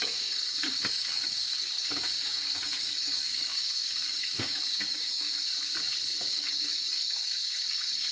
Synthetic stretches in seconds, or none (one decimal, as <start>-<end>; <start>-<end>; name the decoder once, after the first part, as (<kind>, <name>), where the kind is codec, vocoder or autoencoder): 0.0-5.5 (codec, DAC); 6.2-8.1